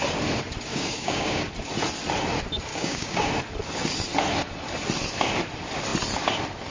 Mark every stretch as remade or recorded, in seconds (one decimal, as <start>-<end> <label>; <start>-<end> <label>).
0.0-0.7 recorded; 0.7-1.5 remade; 1.5-2.7 recorded; 2.7-3.3 remade; 3.3-6.7 recorded